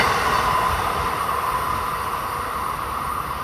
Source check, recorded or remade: recorded